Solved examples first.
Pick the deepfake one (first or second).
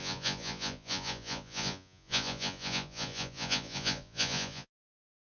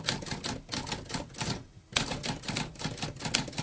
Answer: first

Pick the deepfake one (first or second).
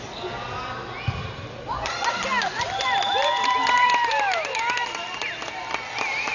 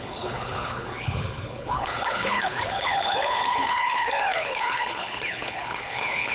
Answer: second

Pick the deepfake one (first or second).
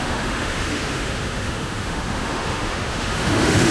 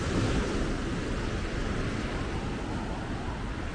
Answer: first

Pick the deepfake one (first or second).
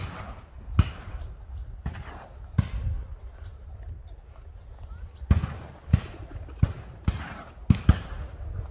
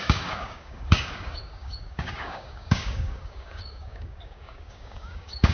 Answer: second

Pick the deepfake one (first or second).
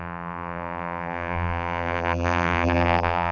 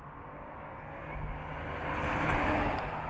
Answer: first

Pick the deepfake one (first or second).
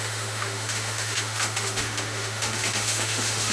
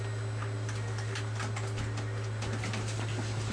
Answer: first